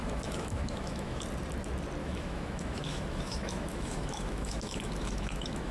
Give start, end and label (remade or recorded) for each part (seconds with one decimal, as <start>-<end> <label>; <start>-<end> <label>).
0.0-1.2 remade; 1.2-2.0 recorded; 2.0-5.7 remade

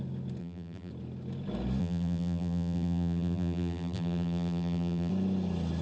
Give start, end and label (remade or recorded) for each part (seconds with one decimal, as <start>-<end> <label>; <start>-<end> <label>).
0.0-0.4 recorded; 0.4-0.9 remade; 0.9-1.8 recorded; 1.8-5.1 remade; 5.1-5.8 recorded

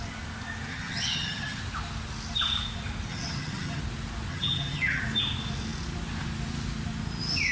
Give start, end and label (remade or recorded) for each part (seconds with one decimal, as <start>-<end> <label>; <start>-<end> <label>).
0.0-0.7 recorded; 0.7-1.6 remade; 1.6-3.1 recorded; 3.1-3.8 remade; 3.8-4.3 recorded; 4.3-5.0 remade; 5.0-7.5 recorded